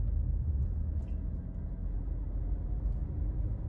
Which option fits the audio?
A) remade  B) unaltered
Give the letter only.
B